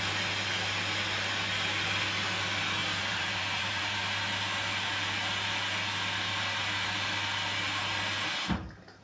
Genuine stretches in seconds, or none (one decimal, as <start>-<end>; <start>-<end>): 0.0-2.8; 4.0-9.0